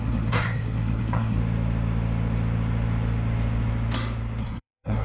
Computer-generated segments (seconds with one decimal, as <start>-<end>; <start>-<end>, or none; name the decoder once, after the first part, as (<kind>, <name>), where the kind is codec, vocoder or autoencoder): 0.0-1.4 (codec, SNAC); 4.4-5.0